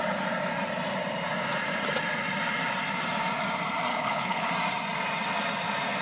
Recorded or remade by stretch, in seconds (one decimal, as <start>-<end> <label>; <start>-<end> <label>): 0.0-3.9 recorded; 3.9-4.5 remade; 4.5-6.0 recorded